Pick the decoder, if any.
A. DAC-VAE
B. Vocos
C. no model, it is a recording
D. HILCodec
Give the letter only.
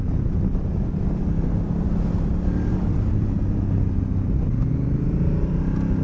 C